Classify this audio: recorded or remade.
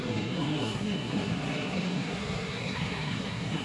remade